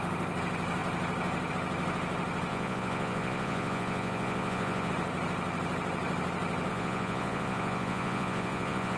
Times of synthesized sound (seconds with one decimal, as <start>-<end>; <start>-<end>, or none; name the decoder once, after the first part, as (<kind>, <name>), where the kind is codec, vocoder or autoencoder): 2.5-4.9 (vocoder, Vocos); 6.7-9.0